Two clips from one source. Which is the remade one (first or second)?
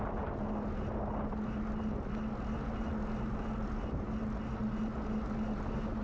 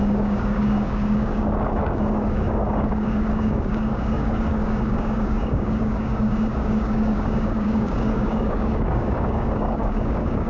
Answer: second